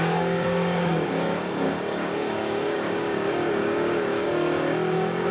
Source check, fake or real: fake